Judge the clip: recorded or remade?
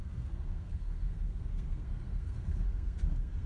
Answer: remade